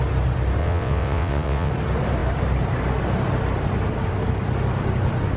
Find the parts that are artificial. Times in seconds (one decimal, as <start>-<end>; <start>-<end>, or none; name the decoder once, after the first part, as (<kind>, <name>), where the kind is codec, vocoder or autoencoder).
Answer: 0.6-1.7 (vocoder, WaveNeXt)